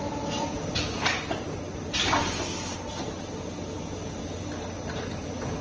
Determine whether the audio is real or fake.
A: real